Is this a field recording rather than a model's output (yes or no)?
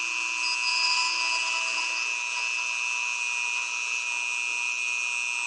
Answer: yes